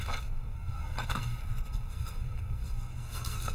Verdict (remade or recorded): remade